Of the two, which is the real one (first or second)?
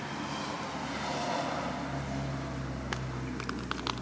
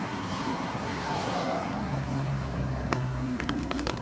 first